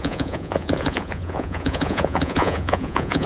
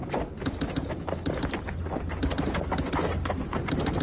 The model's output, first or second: first